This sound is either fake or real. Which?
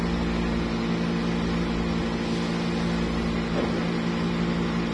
real